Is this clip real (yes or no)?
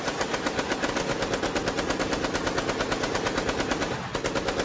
yes